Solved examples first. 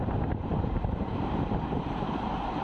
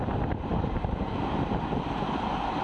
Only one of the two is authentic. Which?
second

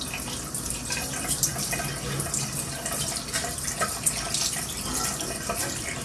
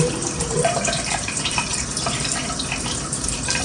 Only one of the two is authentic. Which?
first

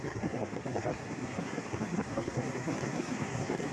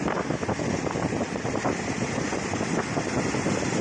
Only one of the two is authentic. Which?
second